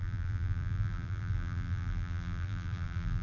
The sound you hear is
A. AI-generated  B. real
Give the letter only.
A